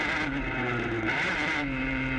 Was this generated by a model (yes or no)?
yes